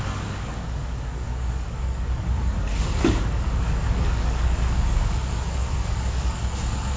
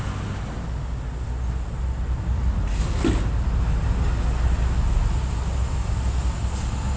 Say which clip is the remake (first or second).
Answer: first